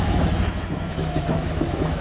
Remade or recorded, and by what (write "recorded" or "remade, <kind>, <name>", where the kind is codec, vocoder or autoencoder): remade, autoencoder, DAC-VAE